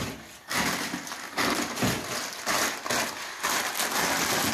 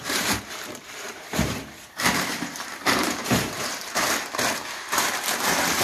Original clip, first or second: first